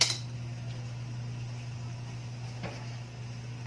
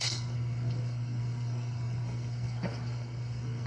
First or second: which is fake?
second